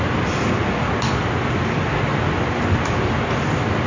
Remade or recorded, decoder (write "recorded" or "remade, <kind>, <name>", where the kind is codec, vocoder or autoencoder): recorded